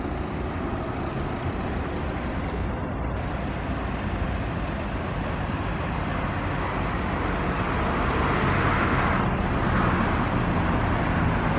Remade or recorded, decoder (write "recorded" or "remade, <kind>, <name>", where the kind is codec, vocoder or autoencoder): recorded